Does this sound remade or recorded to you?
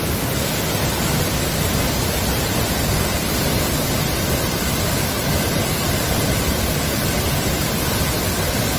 recorded